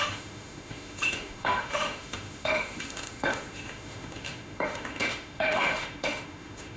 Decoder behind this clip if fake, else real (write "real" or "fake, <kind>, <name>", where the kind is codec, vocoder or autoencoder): fake, autoencoder, DAC-VAE